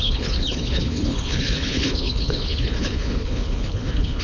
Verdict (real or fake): fake